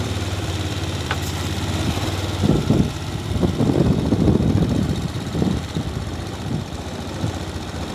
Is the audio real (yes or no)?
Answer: no